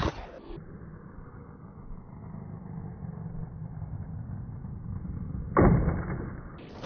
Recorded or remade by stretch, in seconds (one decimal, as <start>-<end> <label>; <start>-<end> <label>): 0.0-6.9 recorded